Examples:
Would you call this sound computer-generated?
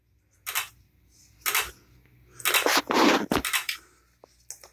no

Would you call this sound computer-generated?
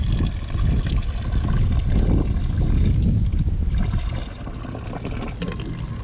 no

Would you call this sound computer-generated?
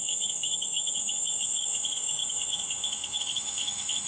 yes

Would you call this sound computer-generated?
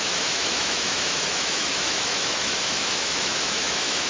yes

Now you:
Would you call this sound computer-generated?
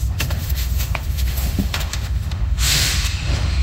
yes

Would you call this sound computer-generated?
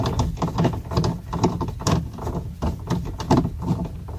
no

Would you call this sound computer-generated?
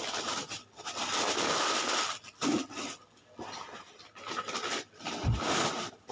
no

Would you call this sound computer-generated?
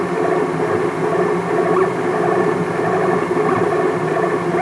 no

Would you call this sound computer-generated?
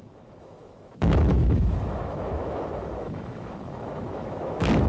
yes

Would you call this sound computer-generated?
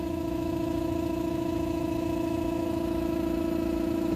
yes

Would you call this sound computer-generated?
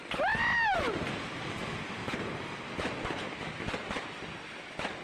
no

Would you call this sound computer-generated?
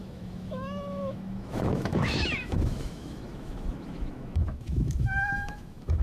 yes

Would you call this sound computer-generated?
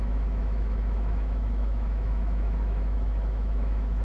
yes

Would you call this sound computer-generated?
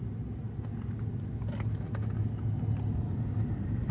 no